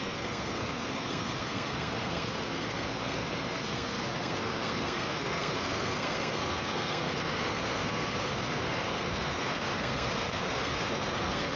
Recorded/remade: remade